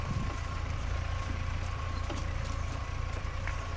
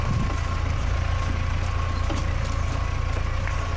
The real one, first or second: second